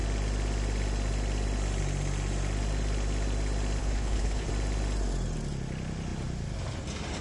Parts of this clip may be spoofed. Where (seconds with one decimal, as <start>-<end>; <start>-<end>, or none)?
3.8-4.5